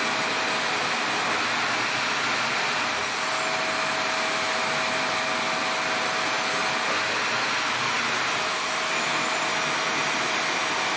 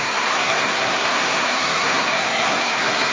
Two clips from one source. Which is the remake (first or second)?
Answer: second